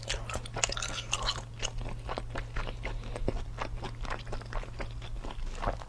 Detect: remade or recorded recorded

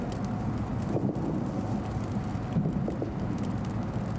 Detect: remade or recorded recorded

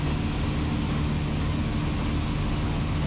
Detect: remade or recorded recorded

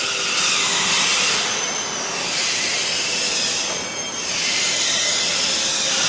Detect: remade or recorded recorded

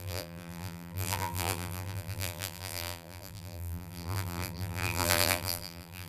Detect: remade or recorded remade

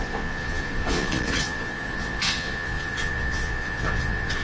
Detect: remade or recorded remade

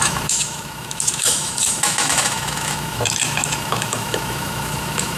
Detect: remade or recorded remade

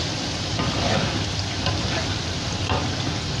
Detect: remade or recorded recorded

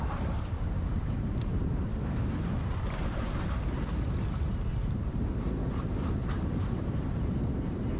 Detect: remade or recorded remade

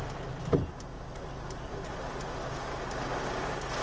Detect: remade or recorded recorded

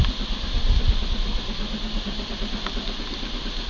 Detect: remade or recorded recorded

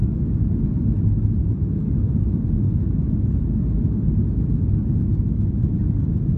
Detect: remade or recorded recorded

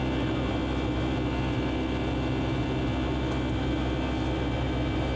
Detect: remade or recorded recorded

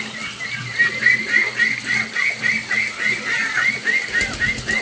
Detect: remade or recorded recorded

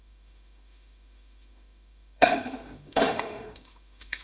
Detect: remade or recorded remade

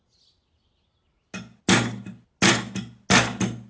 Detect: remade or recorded recorded